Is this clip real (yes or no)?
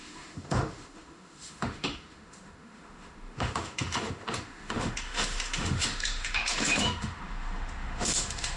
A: no